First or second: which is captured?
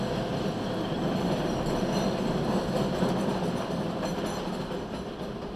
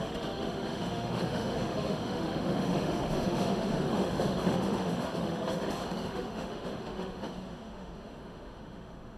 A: first